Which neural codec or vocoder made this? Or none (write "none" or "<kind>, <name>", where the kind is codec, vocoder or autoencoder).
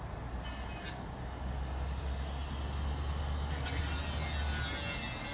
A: none